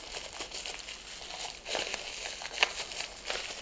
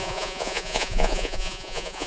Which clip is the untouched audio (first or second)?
first